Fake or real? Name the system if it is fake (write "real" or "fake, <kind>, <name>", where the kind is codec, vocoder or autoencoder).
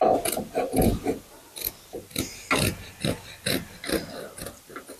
real